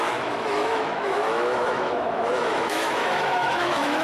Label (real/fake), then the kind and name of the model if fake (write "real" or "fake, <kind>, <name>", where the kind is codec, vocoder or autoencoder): fake, autoencoder, DAC-VAE